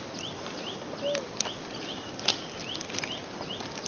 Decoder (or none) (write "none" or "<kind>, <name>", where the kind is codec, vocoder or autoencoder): none